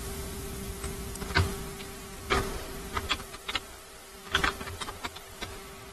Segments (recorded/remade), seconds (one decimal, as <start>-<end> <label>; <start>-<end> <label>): 0.0-5.9 recorded